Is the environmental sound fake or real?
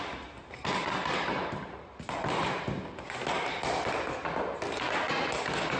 real